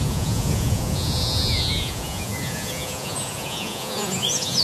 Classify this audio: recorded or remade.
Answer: remade